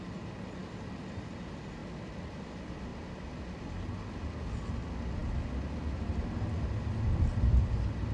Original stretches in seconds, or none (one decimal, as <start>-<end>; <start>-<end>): 0.0-8.1